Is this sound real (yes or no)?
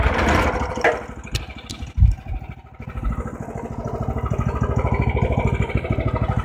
yes